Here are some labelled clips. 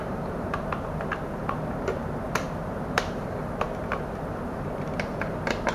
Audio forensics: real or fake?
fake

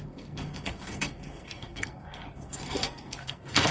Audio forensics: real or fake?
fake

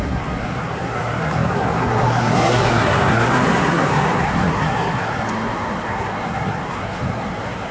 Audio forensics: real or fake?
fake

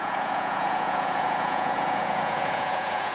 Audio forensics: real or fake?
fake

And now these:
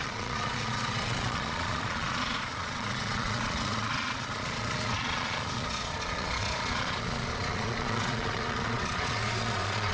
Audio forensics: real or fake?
fake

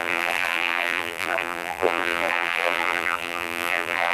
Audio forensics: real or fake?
fake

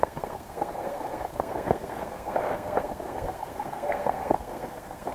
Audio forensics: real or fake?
fake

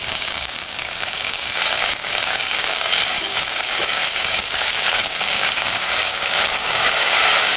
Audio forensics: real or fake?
fake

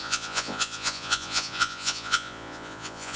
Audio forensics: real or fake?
fake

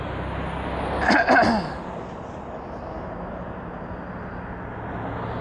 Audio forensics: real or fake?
real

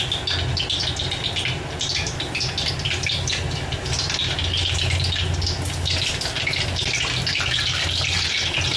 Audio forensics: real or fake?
real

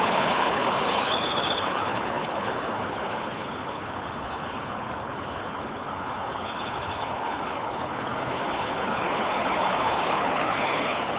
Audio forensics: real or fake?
fake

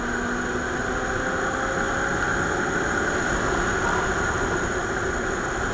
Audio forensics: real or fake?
real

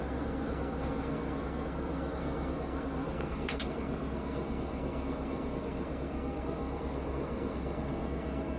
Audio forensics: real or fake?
fake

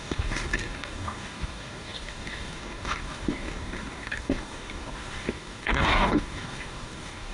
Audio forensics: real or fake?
fake